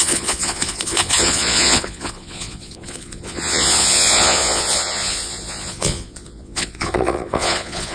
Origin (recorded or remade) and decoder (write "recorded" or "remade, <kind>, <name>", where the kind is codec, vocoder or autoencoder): remade, vocoder, Vocos